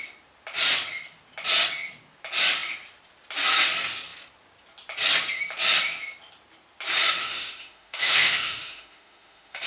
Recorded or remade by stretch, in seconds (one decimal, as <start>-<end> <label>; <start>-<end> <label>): 0.0-7.2 recorded; 7.2-9.7 remade